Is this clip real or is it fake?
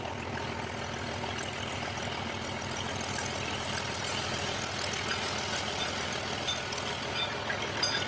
real